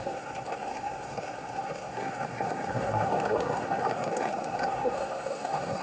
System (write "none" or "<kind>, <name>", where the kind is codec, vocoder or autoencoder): codec, SNAC